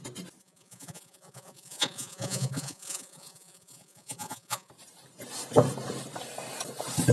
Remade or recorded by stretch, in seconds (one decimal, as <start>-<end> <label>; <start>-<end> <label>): 0.0-0.4 recorded; 0.4-4.7 remade; 4.7-7.1 recorded

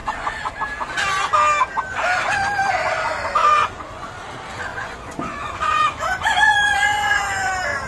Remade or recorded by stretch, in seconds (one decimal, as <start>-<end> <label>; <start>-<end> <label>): 0.0-0.5 remade; 0.5-3.4 recorded; 3.4-4.2 remade; 4.2-4.7 recorded; 4.7-7.5 remade; 7.5-7.9 recorded

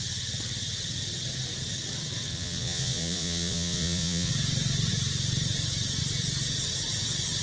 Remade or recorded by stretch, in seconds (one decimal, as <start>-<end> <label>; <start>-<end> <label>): 0.0-2.3 recorded; 2.3-4.3 remade; 4.3-7.4 recorded